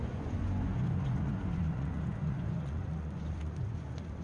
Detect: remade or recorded remade